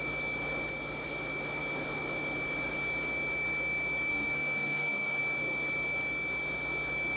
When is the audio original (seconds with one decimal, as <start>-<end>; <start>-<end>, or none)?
0.0-4.1; 5.2-7.2